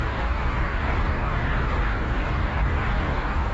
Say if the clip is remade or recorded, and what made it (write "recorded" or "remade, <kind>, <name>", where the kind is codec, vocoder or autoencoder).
remade, codec, DAC